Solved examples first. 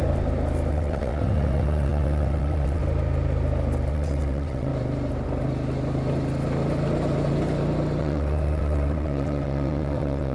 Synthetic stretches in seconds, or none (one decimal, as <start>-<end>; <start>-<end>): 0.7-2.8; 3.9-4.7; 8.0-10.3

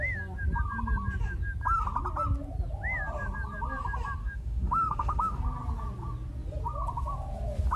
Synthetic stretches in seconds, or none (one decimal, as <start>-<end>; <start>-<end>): 4.2-5.4

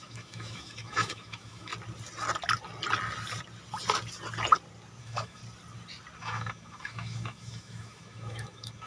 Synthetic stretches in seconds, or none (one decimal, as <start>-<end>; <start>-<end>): 0.0-1.7; 5.0-5.4; 6.2-8.9

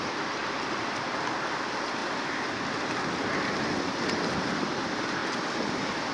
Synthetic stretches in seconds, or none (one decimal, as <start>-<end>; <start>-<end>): none